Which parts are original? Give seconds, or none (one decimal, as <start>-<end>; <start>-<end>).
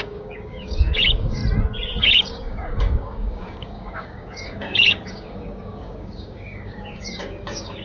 1.4-2.0